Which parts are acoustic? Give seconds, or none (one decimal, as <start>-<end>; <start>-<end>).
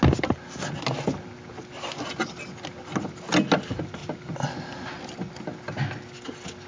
0.0-6.7